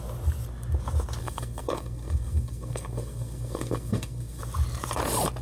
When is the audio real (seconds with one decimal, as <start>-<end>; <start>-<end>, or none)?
0.0-1.2; 4.4-5.4